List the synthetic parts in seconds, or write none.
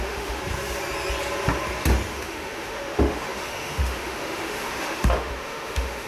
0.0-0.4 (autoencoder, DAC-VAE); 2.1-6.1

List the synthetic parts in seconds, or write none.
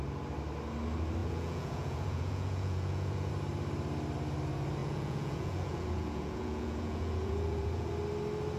1.2-3.3 (vocoder, Vocos); 4.8-7.9